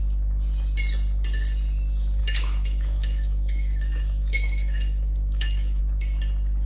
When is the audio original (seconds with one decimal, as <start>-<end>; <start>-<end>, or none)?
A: 0.0-2.2; 5.8-6.7